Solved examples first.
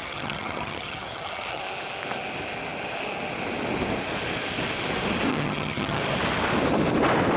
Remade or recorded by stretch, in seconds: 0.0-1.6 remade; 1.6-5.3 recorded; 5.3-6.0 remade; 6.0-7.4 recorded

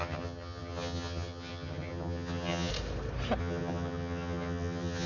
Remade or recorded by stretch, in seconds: 0.0-2.7 remade; 2.7-3.4 recorded; 3.4-5.1 remade

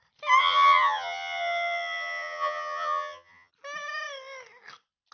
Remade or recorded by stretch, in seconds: 0.0-0.4 recorded; 0.4-3.5 remade; 3.5-5.1 recorded

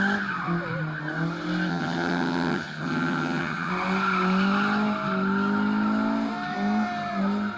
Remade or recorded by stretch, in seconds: 0.0-1.7 recorded; 1.7-3.7 remade; 3.7-7.6 recorded

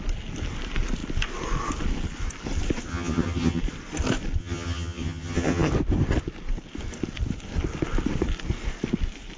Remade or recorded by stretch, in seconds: 0.0-2.9 recorded; 2.9-3.6 remade; 3.6-4.4 recorded; 4.4-5.7 remade; 5.7-9.4 recorded

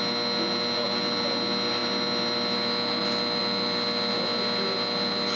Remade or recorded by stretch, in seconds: 0.0-5.4 recorded

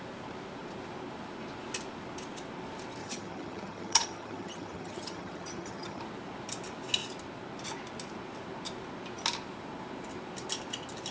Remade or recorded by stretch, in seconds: 0.0-3.0 recorded; 3.0-6.0 remade; 6.0-11.1 recorded